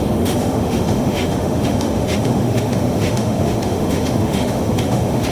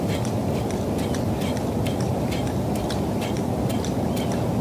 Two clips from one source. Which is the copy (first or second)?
first